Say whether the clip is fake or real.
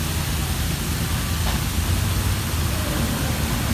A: real